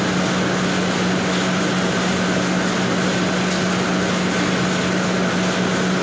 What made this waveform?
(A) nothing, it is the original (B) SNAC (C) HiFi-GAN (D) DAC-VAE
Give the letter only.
A